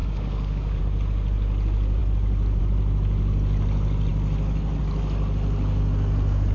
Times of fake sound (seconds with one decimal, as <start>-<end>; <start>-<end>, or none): 0.0-0.8